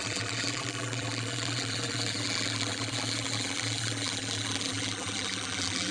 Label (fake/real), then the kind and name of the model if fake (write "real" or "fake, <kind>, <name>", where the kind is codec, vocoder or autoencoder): fake, vocoder, BigVGAN v2